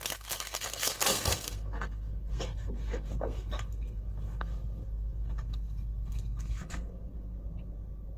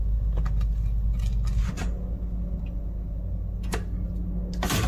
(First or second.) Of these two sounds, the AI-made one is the first